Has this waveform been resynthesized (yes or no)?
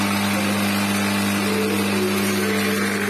no